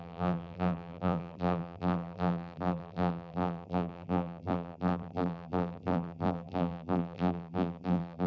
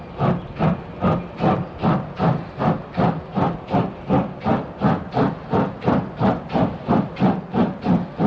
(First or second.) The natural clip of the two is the second